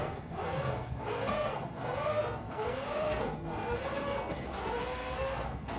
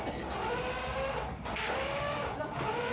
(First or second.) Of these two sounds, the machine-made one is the first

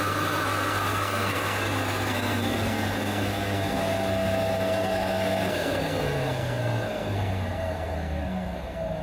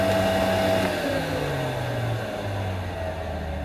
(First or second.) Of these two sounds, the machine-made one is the first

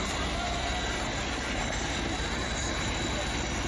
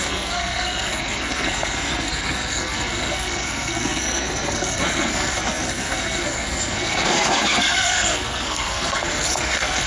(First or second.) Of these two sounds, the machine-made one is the second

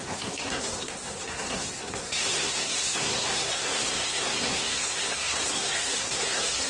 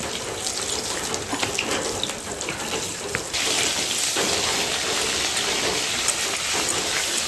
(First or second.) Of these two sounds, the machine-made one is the first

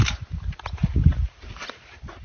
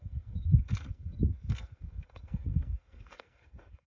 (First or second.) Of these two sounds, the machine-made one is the second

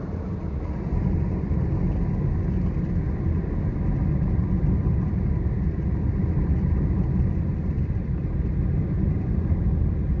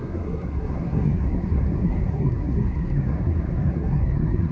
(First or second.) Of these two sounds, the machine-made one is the second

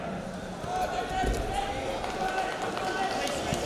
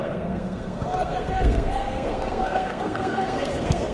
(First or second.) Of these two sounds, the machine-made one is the second